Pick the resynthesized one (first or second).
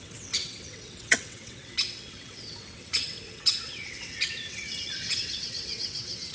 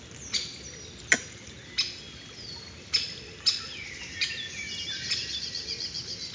first